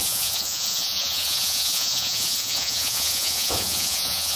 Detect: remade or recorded remade